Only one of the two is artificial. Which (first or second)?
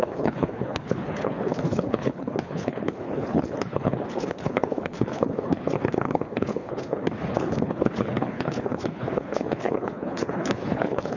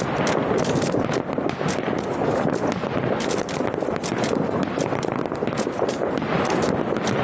first